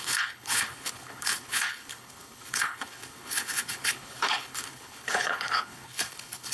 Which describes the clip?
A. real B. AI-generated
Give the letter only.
B